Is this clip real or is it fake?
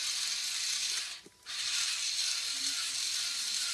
real